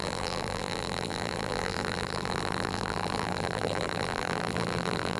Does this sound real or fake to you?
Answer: fake